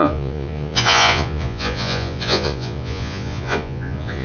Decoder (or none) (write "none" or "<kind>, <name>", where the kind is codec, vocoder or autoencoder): vocoder, Vocos